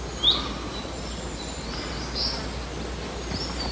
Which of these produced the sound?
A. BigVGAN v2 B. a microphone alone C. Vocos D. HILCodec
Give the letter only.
B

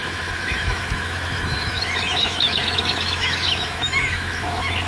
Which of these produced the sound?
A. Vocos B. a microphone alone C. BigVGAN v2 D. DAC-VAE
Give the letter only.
D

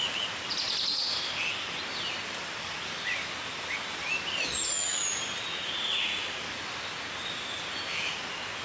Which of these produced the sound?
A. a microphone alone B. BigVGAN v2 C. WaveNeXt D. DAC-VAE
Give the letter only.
A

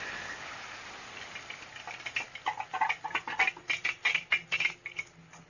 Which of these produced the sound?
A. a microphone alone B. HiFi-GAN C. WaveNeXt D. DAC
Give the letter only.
A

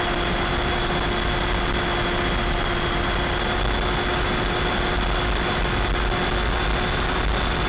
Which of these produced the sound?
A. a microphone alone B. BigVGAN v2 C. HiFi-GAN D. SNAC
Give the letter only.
A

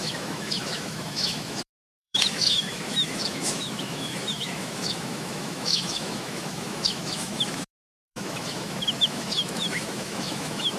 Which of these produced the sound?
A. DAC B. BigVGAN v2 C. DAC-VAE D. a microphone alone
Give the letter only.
C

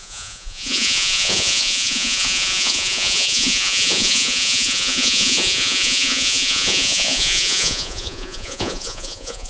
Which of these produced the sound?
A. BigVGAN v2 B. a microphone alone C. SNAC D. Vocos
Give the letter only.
D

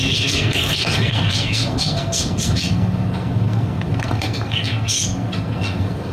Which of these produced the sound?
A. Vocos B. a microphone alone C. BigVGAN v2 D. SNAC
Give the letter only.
D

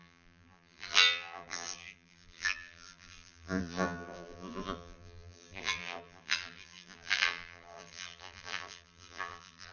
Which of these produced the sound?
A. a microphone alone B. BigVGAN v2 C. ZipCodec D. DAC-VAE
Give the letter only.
B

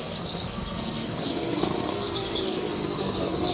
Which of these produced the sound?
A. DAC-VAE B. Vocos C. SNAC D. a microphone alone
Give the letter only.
C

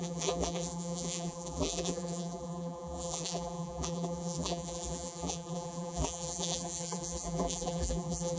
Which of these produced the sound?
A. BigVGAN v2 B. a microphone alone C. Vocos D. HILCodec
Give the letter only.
A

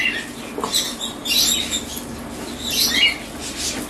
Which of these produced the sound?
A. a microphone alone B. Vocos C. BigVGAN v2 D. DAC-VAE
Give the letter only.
A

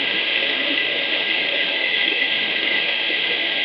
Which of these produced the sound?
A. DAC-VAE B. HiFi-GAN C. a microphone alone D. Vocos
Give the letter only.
A